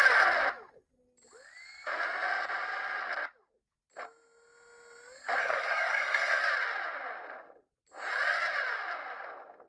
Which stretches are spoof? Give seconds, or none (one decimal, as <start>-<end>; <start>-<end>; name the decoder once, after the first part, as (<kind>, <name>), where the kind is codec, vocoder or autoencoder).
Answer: 5.4-6.4 (codec, SNAC)